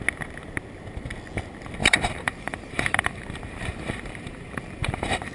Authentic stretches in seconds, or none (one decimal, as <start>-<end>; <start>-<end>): 0.0-1.8